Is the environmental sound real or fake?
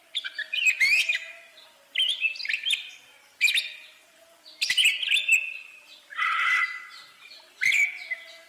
real